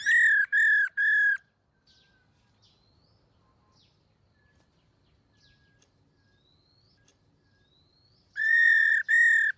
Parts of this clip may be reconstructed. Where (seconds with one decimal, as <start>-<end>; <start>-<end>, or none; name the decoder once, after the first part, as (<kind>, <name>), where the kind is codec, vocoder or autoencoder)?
7.1-8.9 (vocoder, BigVGAN v2)

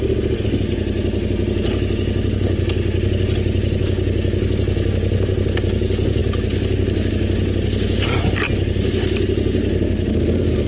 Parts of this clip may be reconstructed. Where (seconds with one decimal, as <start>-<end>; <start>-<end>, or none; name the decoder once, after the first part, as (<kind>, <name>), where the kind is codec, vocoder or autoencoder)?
none